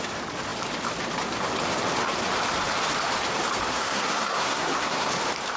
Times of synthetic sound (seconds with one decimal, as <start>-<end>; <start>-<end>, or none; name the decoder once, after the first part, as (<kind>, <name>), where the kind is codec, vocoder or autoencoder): 3.7-5.1 (codec, SNAC)